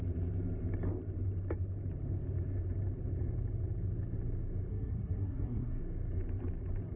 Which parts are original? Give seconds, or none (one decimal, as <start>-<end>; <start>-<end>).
0.0-4.7; 5.8-7.0